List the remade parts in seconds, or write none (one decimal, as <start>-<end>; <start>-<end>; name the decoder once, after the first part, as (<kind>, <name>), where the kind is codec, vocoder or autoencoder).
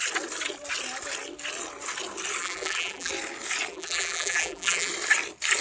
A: 2.4-3.1 (vocoder, BigVGAN v2); 3.7-4.9